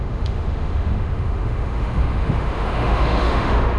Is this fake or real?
fake